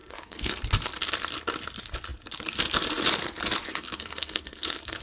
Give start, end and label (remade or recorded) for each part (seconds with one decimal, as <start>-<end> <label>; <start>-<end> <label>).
0.0-0.6 remade; 0.6-3.6 recorded; 3.6-5.0 remade